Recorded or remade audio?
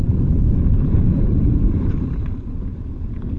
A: remade